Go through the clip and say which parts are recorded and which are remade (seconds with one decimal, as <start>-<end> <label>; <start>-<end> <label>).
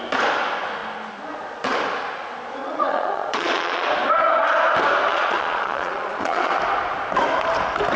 0.0-2.6 recorded; 2.6-3.9 remade; 3.9-5.1 recorded; 5.1-6.5 remade; 6.5-8.0 recorded